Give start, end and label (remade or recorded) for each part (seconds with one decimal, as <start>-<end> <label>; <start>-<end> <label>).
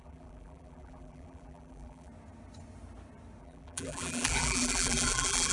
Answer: 0.0-2.1 remade; 2.1-3.4 recorded; 3.4-5.5 remade